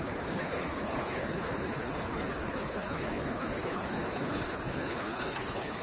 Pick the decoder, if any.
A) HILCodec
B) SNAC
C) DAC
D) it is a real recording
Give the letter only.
A